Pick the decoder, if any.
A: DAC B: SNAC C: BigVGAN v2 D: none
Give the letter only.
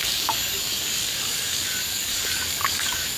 A